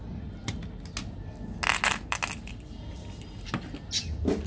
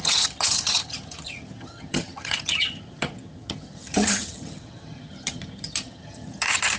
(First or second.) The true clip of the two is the first